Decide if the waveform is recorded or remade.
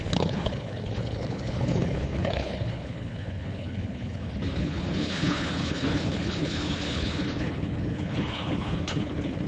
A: remade